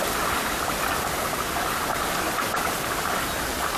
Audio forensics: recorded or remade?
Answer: recorded